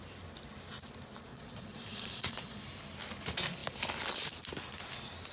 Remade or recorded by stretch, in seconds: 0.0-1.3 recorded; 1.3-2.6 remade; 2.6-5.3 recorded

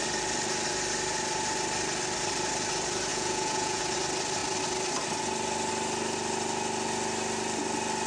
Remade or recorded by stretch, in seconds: 0.0-3.1 recorded; 3.1-3.8 remade; 3.8-8.1 recorded

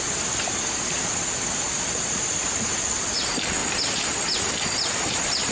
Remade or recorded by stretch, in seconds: 0.0-5.5 recorded

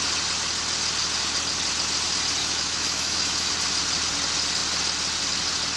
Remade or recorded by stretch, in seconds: 0.0-2.4 recorded; 2.4-3.5 remade; 3.5-5.8 recorded

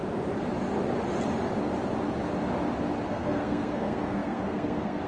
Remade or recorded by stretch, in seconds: 0.0-3.1 recorded; 3.1-5.1 remade

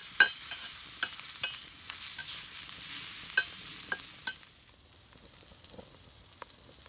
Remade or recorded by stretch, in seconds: 0.0-0.7 remade; 0.7-6.9 recorded

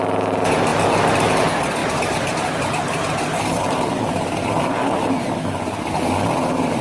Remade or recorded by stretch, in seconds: 0.0-1.8 recorded; 1.8-5.3 remade; 5.3-6.8 recorded

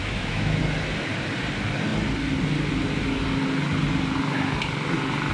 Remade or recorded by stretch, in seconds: 0.0-0.6 remade; 0.6-5.3 recorded